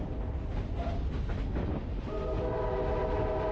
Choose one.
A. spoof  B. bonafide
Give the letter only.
B